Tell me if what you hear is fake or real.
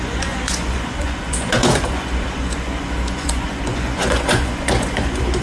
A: fake